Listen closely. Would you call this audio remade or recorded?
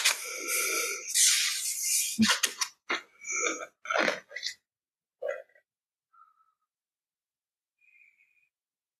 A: recorded